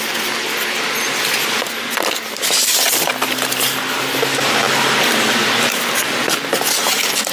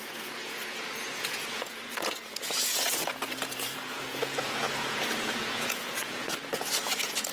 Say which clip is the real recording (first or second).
first